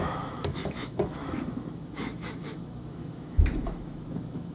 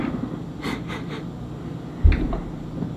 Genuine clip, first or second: second